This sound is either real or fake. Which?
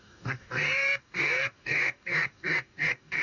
fake